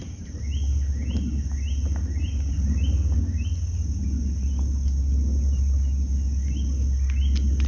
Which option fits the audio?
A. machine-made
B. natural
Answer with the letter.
B